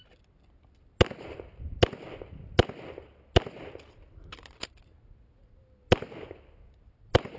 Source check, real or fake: real